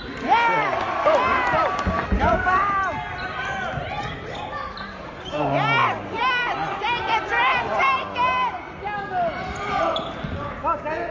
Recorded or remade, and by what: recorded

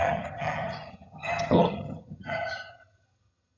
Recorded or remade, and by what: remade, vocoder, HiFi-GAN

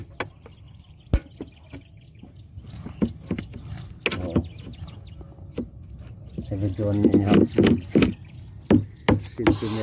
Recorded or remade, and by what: recorded